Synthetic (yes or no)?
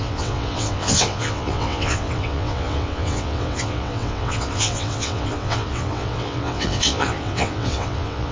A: yes